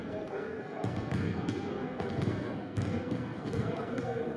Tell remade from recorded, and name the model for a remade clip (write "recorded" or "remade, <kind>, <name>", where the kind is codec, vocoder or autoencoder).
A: remade, codec, SNAC